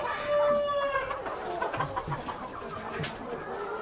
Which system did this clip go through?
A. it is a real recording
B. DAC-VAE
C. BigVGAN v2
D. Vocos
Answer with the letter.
A